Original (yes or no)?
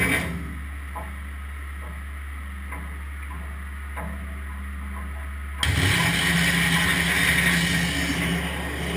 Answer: yes